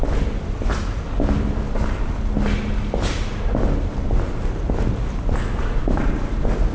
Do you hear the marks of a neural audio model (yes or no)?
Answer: no